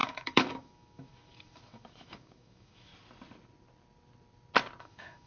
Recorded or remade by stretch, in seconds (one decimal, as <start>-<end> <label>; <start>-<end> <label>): 0.0-2.9 remade; 2.9-4.8 recorded; 4.8-5.3 remade